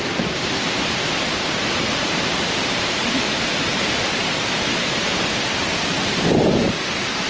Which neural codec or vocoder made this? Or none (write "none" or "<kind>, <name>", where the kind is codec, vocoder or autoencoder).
vocoder, BigVGAN v2